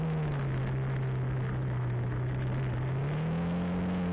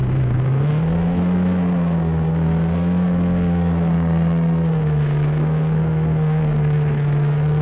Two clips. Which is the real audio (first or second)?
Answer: first